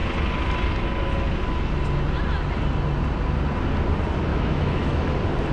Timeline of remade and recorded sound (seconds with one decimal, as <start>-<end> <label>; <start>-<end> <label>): 0.0-4.3 recorded; 4.3-5.1 remade; 5.1-5.5 recorded